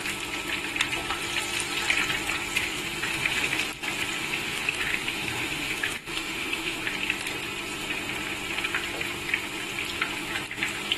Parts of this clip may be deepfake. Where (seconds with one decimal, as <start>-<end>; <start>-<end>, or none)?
2.6-3.6; 4.2-6.8